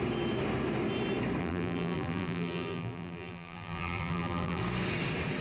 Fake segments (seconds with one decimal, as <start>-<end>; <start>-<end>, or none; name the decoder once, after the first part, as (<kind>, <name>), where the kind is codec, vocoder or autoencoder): 1.4-4.6 (vocoder, BigVGAN v2)